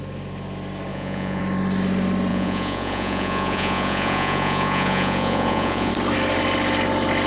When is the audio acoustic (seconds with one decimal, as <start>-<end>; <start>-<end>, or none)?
0.0-0.9; 1.4-2.3; 5.9-7.3